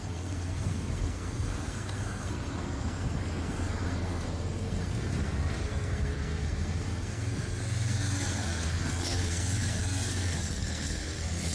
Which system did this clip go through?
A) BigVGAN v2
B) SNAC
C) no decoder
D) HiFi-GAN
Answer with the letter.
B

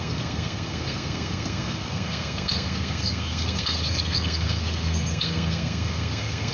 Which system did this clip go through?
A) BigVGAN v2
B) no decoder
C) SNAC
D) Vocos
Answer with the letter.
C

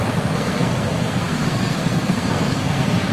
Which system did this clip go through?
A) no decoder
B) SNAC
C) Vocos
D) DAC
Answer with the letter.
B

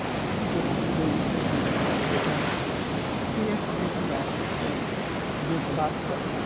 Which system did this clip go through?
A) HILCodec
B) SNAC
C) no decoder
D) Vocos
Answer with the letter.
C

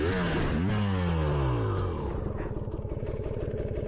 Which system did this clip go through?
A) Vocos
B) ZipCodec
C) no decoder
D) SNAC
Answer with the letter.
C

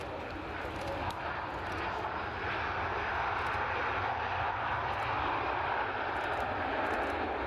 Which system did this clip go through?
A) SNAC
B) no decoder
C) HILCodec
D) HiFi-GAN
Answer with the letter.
B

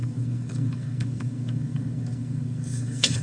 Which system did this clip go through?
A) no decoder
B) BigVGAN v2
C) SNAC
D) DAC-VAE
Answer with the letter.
C